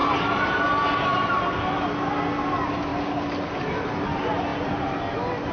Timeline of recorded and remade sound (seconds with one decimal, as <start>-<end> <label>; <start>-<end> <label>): 0.0-0.6 remade; 0.6-5.5 recorded